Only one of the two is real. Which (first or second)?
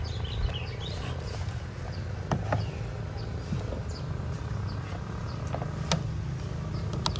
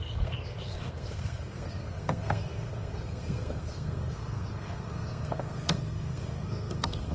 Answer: first